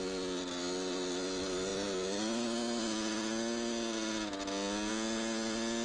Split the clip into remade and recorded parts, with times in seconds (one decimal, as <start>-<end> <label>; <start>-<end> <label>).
0.0-5.8 recorded

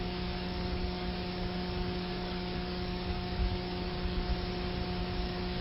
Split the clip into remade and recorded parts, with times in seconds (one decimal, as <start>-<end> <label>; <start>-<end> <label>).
0.0-4.3 remade; 4.3-5.0 recorded; 5.0-5.6 remade